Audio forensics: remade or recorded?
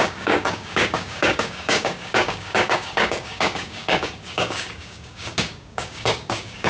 remade